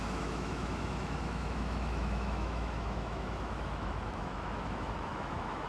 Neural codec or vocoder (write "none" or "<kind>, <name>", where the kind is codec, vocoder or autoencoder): autoencoder, DAC-VAE